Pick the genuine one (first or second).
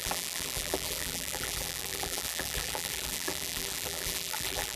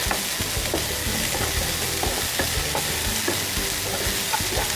second